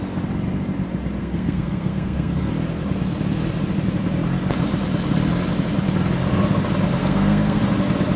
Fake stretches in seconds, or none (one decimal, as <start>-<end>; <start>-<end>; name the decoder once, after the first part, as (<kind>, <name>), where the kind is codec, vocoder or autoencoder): 1.2-2.5 (codec, SNAC); 7.0-7.6